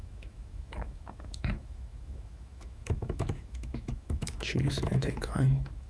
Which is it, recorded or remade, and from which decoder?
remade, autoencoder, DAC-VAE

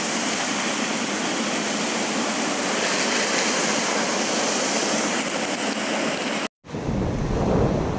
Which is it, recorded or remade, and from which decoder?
recorded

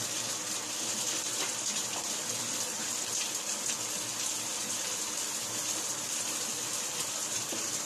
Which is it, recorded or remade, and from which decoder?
recorded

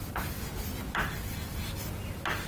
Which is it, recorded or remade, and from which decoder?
recorded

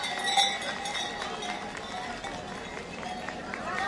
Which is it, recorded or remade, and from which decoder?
recorded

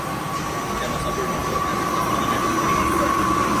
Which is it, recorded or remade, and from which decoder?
recorded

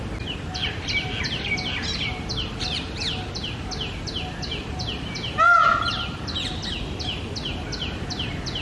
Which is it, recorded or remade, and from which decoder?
recorded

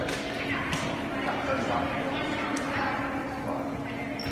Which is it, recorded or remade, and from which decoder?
recorded